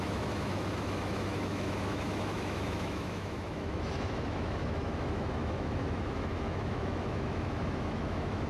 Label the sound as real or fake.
fake